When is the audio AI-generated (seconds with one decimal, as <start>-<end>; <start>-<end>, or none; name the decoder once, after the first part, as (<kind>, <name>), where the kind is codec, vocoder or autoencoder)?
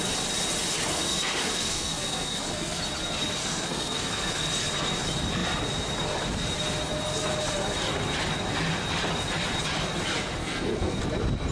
0.9-2.8 (codec, SNAC); 3.4-4.5; 10.4-11.0